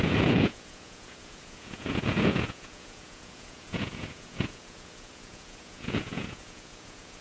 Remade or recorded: remade